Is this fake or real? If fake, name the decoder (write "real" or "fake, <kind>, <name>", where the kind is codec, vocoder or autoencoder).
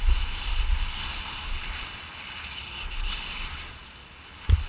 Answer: real